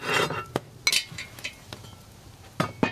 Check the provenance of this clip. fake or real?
real